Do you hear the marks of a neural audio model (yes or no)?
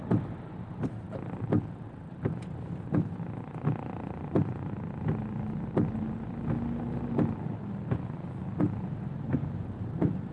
no